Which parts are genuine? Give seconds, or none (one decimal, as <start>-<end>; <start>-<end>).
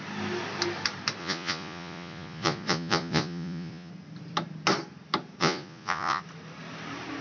0.0-1.2; 3.9-5.4; 6.2-7.2